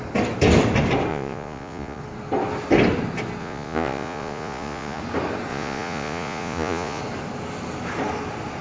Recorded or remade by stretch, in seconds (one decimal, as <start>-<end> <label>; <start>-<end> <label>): 0.0-1.1 recorded; 1.1-2.0 remade; 2.0-3.4 recorded; 3.4-5.0 remade; 5.0-5.5 recorded; 5.5-7.0 remade; 7.0-8.6 recorded